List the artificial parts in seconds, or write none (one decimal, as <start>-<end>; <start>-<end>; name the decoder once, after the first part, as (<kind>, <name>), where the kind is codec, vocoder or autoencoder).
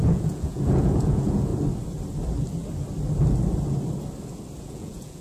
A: 0.0-1.5 (vocoder, Vocos); 4.6-5.2